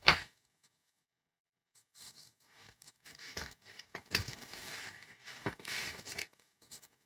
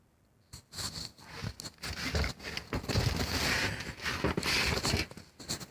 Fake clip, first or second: first